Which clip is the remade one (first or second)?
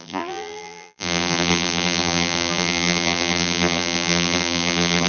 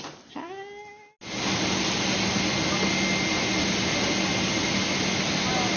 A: first